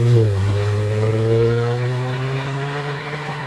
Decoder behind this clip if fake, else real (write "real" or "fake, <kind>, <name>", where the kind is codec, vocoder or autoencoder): fake, codec, SNAC